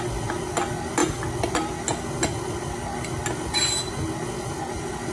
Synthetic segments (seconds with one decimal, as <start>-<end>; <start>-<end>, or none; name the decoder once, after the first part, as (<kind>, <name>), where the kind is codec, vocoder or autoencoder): none